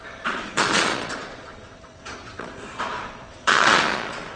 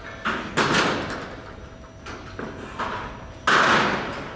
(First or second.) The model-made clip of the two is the first